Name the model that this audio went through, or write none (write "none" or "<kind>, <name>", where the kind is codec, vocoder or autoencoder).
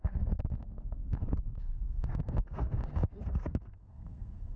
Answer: codec, SNAC